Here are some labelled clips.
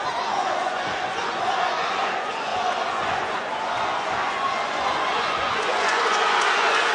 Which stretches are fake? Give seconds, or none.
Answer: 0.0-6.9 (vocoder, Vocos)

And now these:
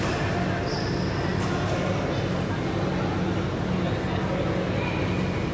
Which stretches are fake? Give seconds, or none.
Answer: none